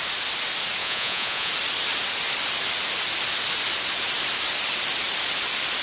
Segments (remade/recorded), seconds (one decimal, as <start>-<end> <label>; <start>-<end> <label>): 0.0-0.8 recorded; 0.8-1.5 remade; 1.5-5.8 recorded